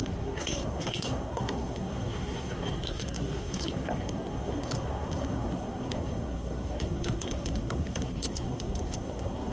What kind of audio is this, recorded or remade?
remade